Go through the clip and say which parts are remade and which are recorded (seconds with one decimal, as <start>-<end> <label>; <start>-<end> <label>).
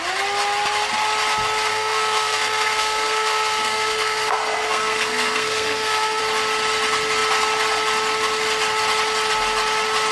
0.0-1.7 recorded; 1.7-6.2 remade; 6.2-10.1 recorded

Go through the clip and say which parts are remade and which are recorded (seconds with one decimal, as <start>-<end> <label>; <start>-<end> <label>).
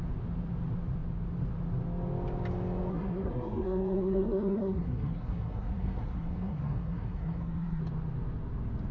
0.0-2.9 recorded; 2.9-7.8 remade; 7.8-8.9 recorded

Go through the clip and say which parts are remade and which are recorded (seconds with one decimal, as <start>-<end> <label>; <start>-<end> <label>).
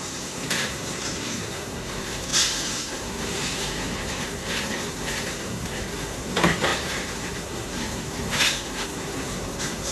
0.0-9.9 remade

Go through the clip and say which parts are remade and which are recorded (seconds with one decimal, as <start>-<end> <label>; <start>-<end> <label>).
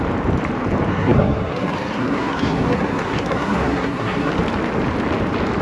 0.0-0.9 recorded; 0.9-4.3 remade; 4.3-5.6 recorded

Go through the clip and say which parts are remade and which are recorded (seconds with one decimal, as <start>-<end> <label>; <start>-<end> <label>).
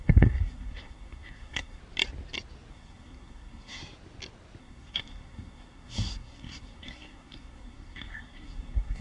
0.0-1.8 remade; 1.8-2.7 recorded; 2.7-3.8 remade; 3.8-4.6 recorded; 4.6-9.0 remade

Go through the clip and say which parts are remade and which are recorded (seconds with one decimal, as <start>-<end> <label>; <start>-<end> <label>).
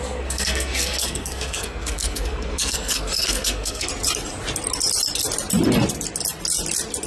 0.0-3.9 remade; 3.9-7.1 recorded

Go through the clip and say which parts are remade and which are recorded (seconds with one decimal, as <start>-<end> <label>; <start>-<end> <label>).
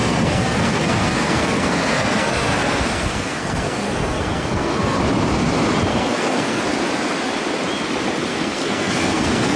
0.0-5.0 remade; 5.0-5.9 recorded; 5.9-6.6 remade; 6.6-8.3 recorded; 8.3-9.6 remade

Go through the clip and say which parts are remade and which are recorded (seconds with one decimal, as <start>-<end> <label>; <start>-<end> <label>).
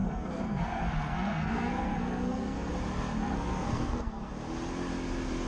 0.0-2.7 remade; 2.7-3.2 recorded; 3.2-4.3 remade; 4.3-5.5 recorded